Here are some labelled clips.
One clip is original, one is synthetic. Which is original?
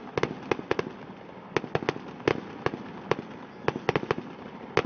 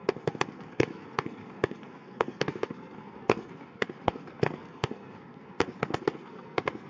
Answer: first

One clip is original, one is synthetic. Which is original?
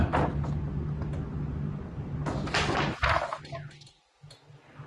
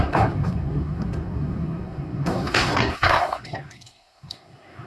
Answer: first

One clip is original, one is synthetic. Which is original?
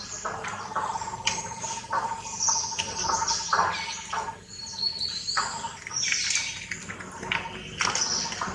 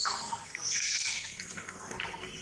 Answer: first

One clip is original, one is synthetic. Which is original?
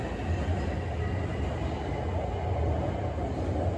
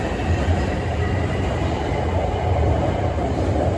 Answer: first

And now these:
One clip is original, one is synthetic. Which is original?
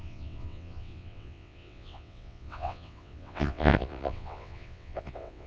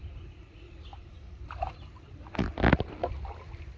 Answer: second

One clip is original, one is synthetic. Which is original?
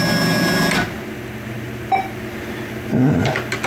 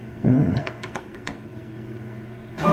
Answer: first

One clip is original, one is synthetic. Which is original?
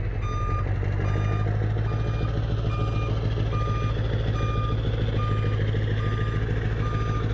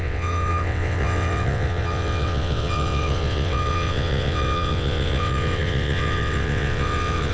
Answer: first